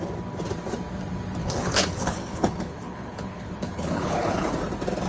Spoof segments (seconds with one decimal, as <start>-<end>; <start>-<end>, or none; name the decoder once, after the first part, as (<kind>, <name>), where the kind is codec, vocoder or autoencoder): 1.4-4.5 (codec, HILCodec)

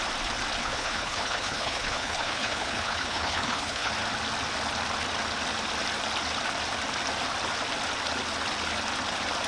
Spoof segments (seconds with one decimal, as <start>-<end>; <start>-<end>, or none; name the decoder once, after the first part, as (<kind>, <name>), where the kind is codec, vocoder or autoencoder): 0.6-3.9 (codec, HILCodec)

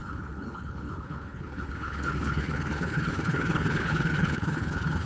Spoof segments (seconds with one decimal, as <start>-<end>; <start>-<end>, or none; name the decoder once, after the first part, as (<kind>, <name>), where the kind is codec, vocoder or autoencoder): 0.0-5.1 (codec, HILCodec)

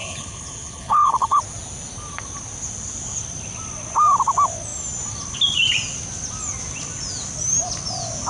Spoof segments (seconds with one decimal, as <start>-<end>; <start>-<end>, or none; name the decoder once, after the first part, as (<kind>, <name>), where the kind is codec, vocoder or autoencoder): 0.0-1.4 (codec, HILCodec)

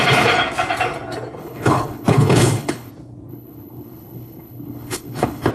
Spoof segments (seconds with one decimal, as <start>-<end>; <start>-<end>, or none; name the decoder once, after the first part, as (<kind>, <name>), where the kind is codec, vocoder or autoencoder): 1.4-2.9 (codec, HILCodec); 3.3-5.5

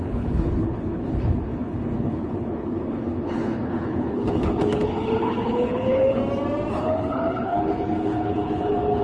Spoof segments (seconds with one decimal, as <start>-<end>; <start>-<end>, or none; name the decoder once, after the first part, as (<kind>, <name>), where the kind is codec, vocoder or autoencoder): 0.0-6.2 (codec, HILCodec); 6.7-9.0

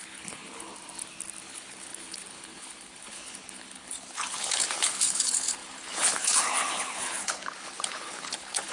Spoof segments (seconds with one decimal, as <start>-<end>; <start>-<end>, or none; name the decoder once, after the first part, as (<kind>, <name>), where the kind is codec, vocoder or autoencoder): 0.0-0.7 (codec, HILCodec); 1.4-8.7